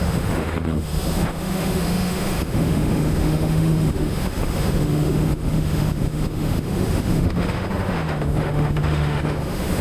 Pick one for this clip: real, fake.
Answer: fake